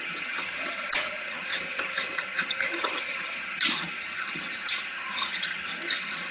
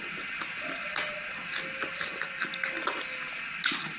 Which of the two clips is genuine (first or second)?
second